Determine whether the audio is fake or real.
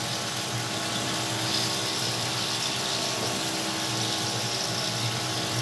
real